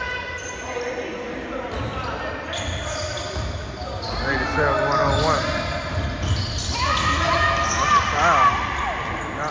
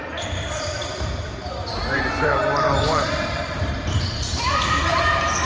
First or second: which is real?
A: first